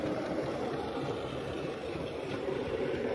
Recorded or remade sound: remade